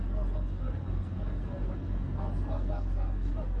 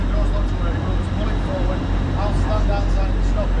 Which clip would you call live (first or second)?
second